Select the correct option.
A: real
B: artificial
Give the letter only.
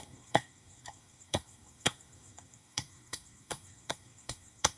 B